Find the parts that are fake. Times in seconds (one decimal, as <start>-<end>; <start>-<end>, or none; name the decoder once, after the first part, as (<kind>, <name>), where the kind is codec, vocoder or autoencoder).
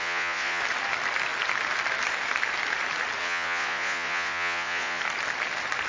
0.0-0.6 (vocoder, Vocos); 3.2-5.0